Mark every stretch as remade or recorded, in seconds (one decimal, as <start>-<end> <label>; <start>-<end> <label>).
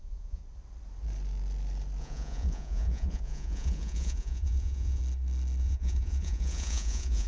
0.0-0.4 remade; 0.4-2.0 recorded; 2.0-5.0 remade; 5.0-5.6 recorded; 5.6-7.3 remade